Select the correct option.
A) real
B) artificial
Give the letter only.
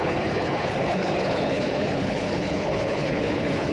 B